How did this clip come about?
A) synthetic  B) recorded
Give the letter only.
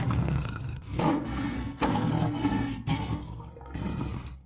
A